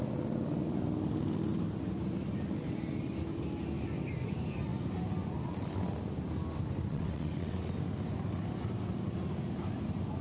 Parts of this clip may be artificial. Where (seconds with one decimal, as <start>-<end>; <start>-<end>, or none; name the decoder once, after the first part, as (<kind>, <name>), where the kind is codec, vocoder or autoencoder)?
6.9-7.7 (vocoder, WaveNeXt)